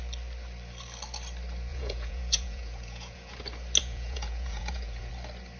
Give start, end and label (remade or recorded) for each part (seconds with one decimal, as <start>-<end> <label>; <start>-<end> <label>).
0.0-1.7 recorded; 1.7-3.4 remade; 3.4-3.8 recorded; 3.8-5.1 remade; 5.1-5.6 recorded